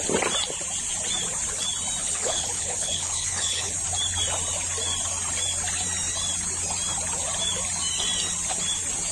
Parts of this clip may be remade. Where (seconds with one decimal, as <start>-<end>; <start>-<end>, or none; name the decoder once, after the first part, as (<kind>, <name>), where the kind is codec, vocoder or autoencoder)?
2.0-3.7 (codec, HILCodec)